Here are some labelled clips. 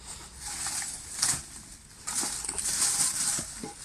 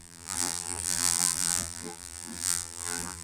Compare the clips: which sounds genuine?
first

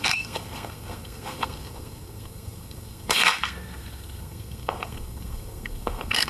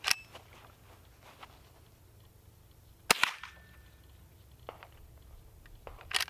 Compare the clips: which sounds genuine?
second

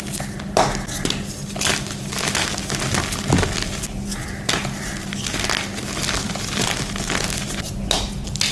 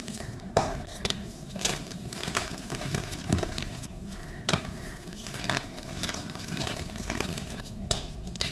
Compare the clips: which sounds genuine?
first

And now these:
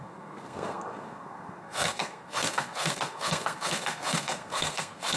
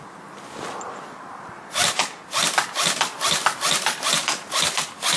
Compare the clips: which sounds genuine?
second